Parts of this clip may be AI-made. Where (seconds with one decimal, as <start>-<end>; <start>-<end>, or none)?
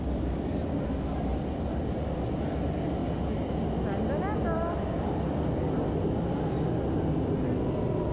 none